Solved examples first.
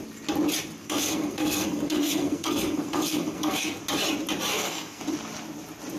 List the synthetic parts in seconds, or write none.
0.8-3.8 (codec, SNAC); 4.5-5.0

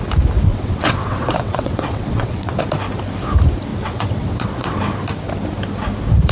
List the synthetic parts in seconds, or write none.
0.5-2.6 (vocoder, WaveNeXt); 3.7-4.8